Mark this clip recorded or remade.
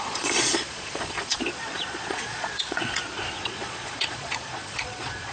remade